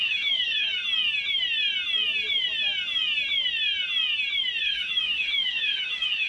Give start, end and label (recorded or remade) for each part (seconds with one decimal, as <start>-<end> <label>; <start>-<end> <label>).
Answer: 0.0-0.8 remade; 0.8-4.6 recorded; 4.6-6.3 remade